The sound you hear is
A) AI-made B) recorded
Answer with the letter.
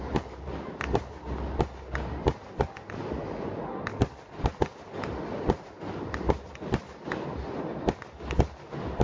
B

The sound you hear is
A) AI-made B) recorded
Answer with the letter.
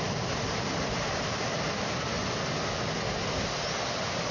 B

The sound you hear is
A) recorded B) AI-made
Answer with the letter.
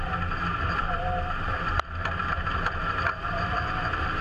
A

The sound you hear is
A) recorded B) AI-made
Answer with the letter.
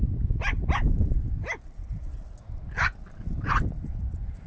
A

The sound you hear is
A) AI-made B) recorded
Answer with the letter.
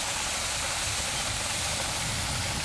B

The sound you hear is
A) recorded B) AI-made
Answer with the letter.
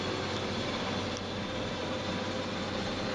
A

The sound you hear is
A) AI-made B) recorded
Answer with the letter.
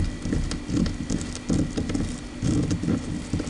B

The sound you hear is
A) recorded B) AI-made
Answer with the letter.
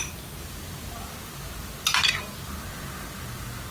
A